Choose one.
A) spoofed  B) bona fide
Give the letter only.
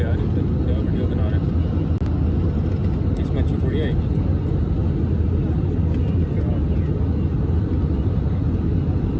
B